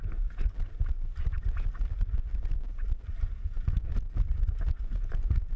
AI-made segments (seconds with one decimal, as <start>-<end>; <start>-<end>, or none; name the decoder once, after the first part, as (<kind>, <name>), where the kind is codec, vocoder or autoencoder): none